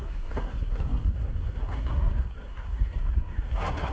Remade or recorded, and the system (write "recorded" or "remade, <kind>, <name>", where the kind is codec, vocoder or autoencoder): remade, codec, SNAC